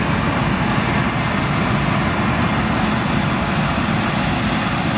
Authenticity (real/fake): real